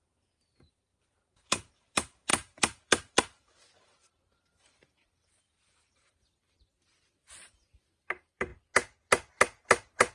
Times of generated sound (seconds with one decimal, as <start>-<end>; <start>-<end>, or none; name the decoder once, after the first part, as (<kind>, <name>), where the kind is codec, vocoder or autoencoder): 0.0-8.5 (vocoder, BigVGAN v2); 9.3-10.1